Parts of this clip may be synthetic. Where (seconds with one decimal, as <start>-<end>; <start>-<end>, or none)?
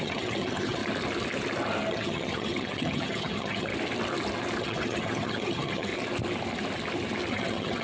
0.0-0.8; 1.9-3.7; 4.6-5.9; 7.3-7.8